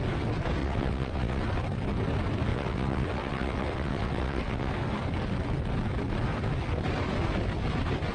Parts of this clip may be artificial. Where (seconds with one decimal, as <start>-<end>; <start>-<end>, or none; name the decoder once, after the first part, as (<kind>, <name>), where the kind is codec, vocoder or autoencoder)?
0.6-1.4 (vocoder, WaveNeXt); 2.5-4.7